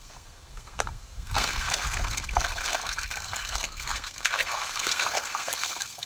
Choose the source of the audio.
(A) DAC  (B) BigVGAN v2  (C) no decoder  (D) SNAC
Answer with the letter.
D